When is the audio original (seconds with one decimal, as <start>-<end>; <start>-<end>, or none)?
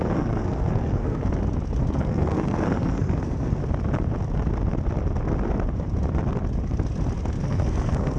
1.2-1.8; 3.6-7.4